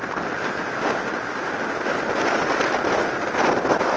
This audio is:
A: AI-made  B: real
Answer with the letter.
B